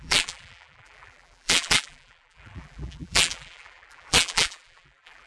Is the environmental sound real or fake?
fake